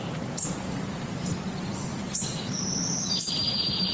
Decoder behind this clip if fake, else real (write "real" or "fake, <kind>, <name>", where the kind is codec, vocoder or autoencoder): fake, vocoder, BigVGAN v2